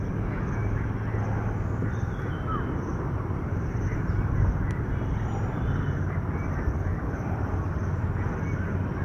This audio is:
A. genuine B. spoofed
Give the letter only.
A